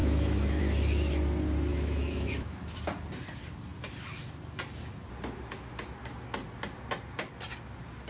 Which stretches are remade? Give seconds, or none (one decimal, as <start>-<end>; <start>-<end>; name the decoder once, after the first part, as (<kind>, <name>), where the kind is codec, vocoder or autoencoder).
0.0-0.6 (autoencoder, DAC-VAE); 1.7-2.8